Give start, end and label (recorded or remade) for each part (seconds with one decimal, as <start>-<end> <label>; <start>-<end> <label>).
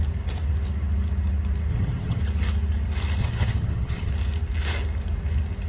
0.0-1.7 recorded; 1.7-2.2 remade; 2.2-3.2 recorded; 3.2-4.1 remade; 4.1-5.7 recorded